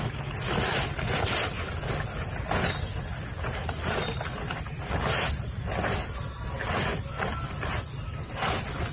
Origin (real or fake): real